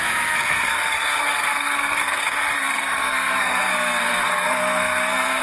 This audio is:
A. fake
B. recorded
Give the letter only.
A